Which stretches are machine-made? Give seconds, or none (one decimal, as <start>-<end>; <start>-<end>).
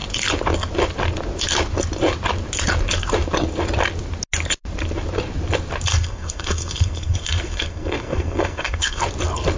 5.9-9.0